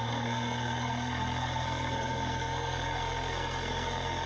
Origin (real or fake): fake